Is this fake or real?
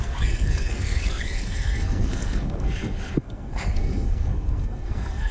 fake